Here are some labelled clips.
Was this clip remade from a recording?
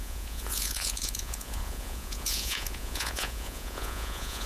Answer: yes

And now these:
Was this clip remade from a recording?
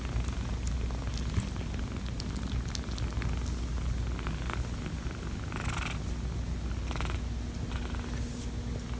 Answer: no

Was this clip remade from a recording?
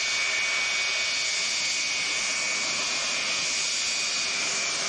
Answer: no